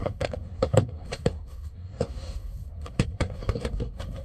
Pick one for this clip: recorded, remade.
remade